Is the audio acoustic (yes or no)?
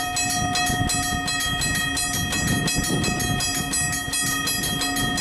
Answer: yes